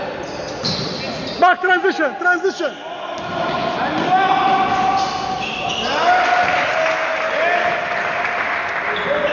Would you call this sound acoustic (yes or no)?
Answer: yes